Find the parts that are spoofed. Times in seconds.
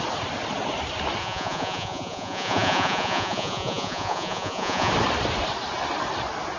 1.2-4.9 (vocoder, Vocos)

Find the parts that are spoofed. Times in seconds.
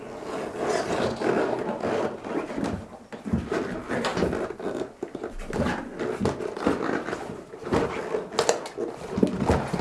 none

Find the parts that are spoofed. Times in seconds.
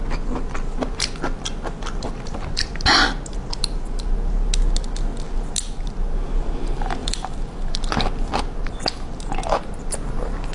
7.0-8.0 (vocoder, BigVGAN v2)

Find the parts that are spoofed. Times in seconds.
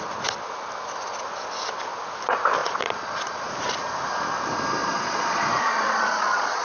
2.6-3.5 (vocoder, Vocos); 4.8-6.6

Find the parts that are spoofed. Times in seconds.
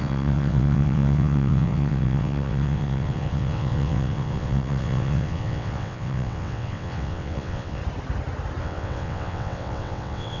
0.0-7.8 (vocoder, WaveNeXt); 8.6-10.4